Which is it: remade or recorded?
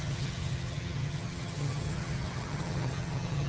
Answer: remade